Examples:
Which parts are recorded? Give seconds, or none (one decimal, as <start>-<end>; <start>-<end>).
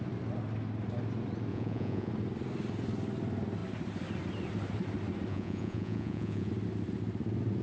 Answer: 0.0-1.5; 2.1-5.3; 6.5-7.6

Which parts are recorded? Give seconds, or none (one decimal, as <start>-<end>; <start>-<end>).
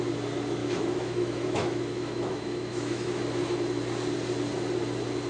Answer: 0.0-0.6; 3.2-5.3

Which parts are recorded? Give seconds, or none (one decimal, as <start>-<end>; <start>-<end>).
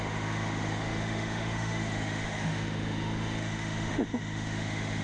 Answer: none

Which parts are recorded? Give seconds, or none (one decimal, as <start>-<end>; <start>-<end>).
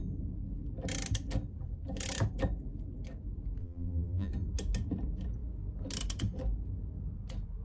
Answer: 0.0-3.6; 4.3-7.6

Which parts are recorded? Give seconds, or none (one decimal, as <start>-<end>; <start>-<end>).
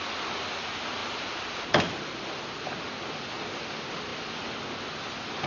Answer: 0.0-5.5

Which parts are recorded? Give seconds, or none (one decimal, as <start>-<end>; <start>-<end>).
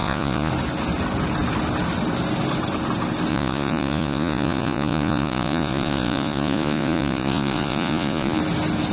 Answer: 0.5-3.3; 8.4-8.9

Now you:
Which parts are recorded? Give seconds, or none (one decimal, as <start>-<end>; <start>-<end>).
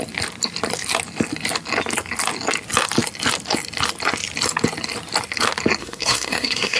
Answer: 0.0-5.8